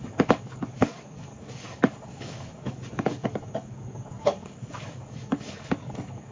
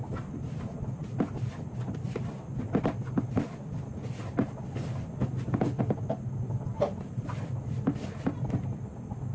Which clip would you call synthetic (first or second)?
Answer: first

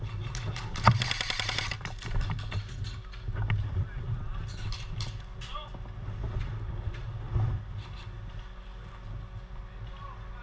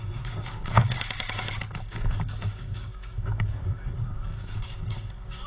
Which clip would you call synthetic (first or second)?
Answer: second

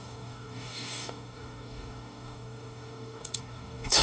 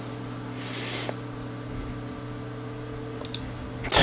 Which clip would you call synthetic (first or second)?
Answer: first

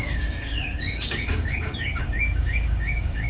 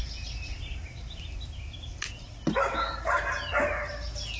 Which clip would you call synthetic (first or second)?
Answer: first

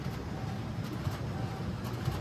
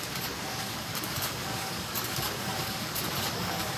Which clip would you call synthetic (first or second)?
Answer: second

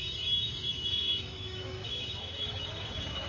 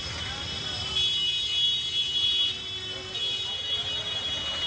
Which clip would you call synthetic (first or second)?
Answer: first